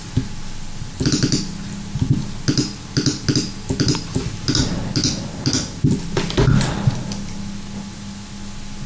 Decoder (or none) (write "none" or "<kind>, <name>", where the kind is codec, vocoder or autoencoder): none